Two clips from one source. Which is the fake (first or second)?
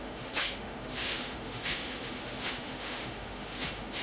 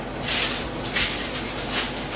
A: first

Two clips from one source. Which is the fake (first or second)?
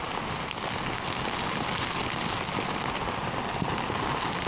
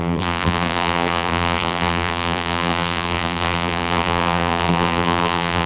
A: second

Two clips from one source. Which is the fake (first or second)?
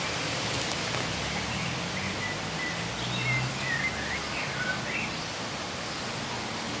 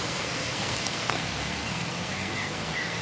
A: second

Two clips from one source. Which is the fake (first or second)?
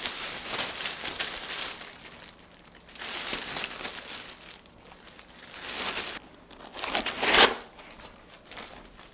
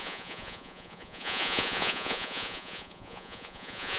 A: second